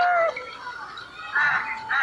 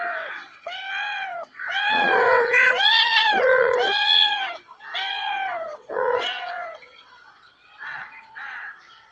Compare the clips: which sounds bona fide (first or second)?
first